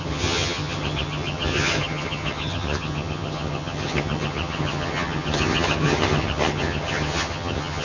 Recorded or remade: remade